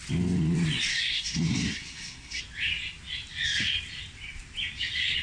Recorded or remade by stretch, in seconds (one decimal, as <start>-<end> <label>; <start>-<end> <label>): 0.0-0.9 recorded; 0.9-2.4 remade; 2.4-5.2 recorded